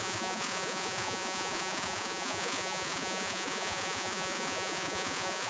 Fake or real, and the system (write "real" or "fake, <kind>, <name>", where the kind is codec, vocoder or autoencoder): fake, vocoder, Vocos